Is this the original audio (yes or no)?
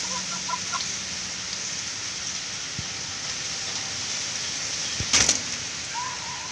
yes